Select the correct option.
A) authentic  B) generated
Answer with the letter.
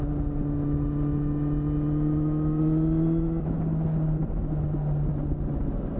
A